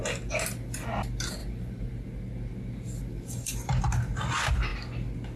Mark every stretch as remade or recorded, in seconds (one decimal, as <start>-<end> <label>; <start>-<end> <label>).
0.0-1.4 recorded; 1.4-1.9 remade; 1.9-3.1 recorded; 3.1-3.8 remade; 3.8-5.4 recorded